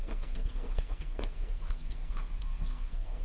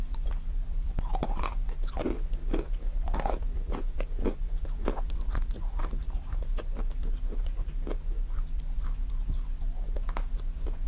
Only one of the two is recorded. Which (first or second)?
second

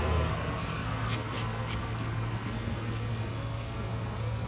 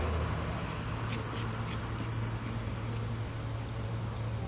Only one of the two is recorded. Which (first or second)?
second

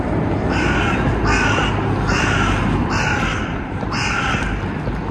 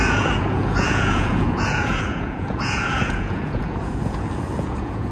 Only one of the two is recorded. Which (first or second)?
first